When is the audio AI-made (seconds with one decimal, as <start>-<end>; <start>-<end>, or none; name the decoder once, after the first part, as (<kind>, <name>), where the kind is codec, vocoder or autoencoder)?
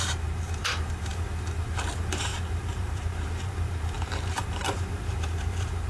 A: 0.0-5.9 (vocoder, BigVGAN v2)